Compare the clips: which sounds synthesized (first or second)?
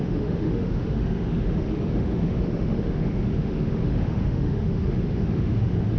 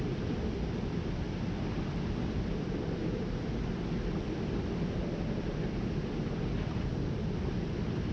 first